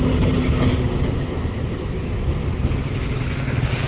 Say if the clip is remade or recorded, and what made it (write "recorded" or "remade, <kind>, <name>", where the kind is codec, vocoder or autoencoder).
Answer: recorded